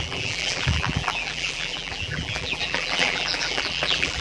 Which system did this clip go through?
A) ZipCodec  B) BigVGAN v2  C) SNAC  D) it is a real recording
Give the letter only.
B